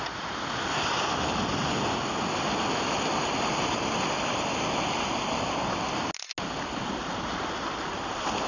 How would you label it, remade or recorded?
recorded